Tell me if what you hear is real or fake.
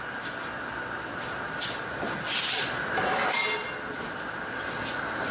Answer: real